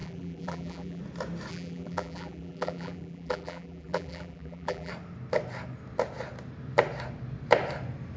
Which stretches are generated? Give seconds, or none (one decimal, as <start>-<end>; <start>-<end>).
0.0-1.0; 1.5-4.9